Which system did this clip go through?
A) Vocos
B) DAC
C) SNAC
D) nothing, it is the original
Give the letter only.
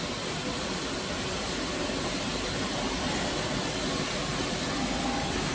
D